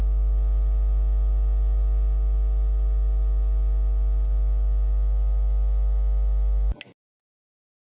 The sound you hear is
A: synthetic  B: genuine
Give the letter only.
B